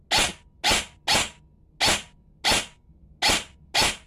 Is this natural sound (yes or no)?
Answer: yes